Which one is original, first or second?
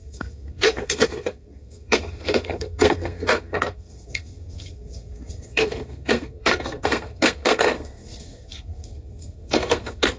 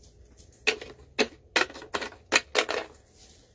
second